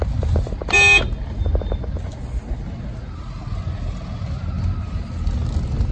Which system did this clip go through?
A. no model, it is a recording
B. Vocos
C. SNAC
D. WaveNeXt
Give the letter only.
A